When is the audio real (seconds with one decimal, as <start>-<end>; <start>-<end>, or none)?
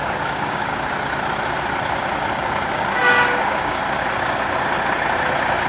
0.7-2.7; 3.8-5.7